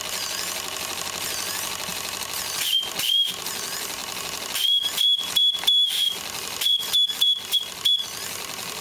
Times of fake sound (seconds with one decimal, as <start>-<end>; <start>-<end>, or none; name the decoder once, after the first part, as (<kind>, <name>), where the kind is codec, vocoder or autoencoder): none